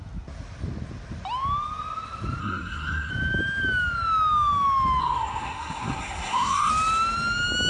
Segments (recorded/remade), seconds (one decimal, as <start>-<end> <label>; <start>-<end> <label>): 0.0-2.4 recorded; 2.4-3.1 remade; 3.1-5.0 recorded; 5.0-6.7 remade; 6.7-7.7 recorded